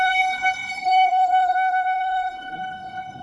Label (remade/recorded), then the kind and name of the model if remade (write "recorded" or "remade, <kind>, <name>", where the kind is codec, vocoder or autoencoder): remade, codec, SNAC